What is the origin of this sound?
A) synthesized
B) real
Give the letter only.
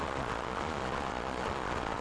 A